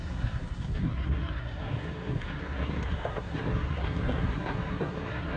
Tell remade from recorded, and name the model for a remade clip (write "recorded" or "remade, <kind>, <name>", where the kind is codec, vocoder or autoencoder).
remade, codec, SNAC